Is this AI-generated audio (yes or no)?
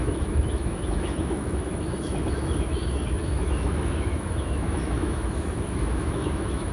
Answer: yes